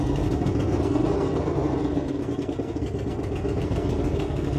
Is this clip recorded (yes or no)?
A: no